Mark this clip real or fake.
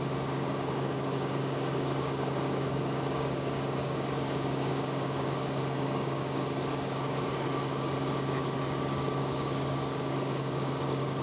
fake